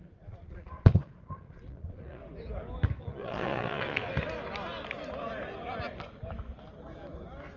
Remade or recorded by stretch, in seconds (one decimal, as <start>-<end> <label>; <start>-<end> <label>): 0.0-2.2 remade; 2.2-3.0 recorded; 3.0-4.0 remade; 4.0-7.6 recorded